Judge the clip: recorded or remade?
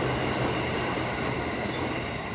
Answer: recorded